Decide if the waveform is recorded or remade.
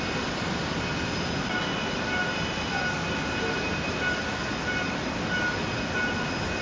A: recorded